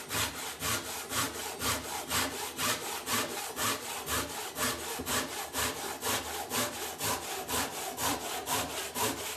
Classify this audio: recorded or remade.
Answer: remade